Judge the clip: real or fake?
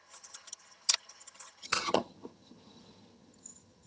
fake